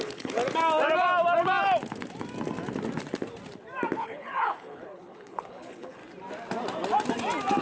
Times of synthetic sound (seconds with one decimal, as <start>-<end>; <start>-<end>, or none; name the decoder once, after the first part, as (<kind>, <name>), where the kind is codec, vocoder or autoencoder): 0.0-0.4 (codec, HILCodec); 4.0-6.0